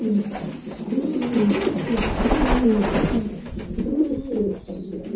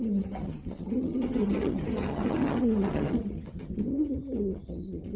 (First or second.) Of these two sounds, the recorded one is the first